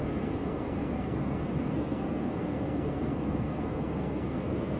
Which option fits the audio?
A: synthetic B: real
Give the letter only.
A